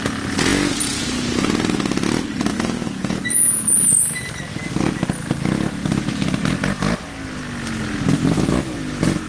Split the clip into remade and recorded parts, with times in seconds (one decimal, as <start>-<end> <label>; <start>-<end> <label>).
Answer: 0.0-0.5 recorded; 0.5-1.0 remade; 1.0-2.5 recorded; 2.5-3.8 remade; 3.8-9.3 recorded